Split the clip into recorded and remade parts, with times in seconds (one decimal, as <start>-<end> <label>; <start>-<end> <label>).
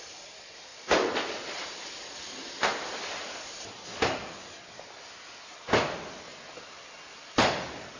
0.0-8.0 recorded